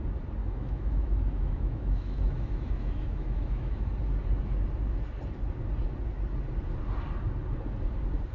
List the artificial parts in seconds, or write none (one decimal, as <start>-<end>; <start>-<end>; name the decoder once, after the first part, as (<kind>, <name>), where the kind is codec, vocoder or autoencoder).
0.4-3.9 (autoencoder, DAC-VAE)